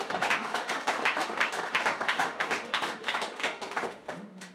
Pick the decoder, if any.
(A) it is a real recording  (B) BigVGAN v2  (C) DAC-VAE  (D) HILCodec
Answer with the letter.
C